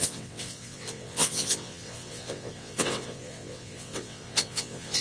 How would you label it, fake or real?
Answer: fake